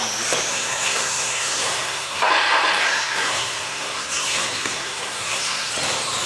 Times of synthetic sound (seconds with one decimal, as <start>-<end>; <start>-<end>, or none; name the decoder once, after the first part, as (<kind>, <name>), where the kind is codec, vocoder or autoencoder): 0.5-2.3 (codec, SNAC); 2.8-5.7